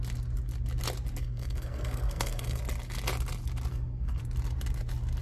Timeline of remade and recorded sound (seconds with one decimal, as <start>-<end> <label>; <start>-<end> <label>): 0.0-1.2 recorded; 1.2-2.6 remade; 2.6-3.7 recorded; 3.7-4.2 remade; 4.2-5.2 recorded